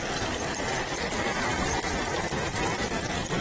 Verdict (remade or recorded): recorded